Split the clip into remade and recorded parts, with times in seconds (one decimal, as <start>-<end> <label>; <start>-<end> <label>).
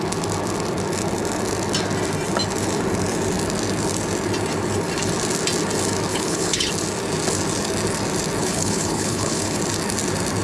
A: 0.0-6.1 recorded; 6.1-6.7 remade; 6.7-8.4 recorded; 8.4-9.6 remade; 9.6-10.4 recorded